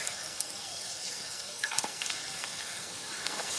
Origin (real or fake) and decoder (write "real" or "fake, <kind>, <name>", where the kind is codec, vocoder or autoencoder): fake, codec, SNAC